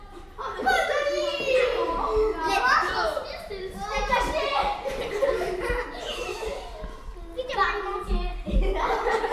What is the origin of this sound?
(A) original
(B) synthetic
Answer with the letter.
A